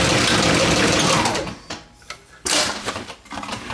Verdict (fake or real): fake